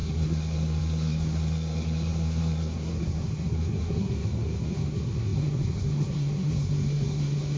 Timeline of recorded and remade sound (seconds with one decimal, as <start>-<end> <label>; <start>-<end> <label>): 0.0-7.6 remade